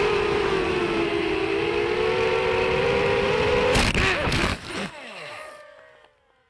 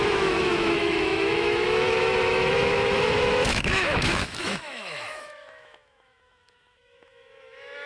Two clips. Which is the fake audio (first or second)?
second